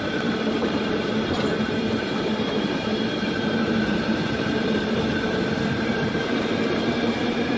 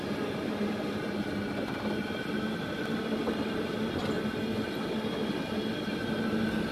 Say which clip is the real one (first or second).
second